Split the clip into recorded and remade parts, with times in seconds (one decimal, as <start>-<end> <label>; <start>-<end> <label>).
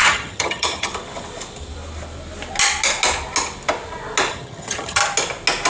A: 0.0-0.9 remade; 0.9-4.3 recorded; 4.3-5.0 remade; 5.0-5.7 recorded